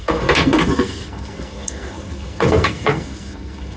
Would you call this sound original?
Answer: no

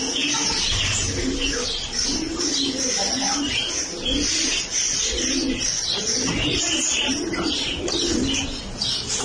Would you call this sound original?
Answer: yes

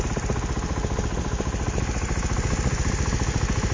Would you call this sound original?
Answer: yes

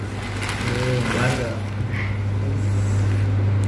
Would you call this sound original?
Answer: yes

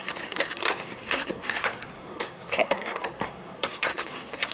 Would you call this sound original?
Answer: no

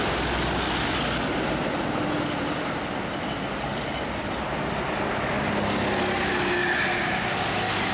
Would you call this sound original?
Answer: yes